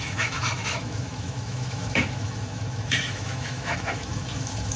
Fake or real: fake